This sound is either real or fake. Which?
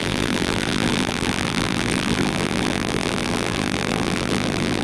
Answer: fake